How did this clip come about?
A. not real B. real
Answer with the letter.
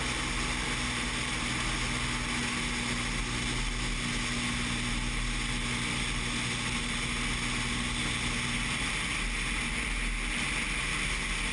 B